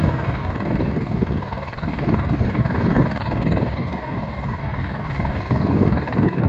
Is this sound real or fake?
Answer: fake